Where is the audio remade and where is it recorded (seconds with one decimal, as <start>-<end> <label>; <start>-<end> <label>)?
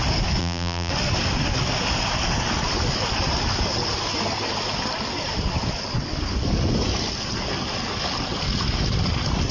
0.0-0.4 recorded; 0.4-0.9 remade; 0.9-9.5 recorded